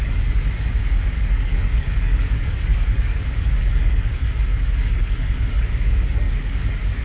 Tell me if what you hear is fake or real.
fake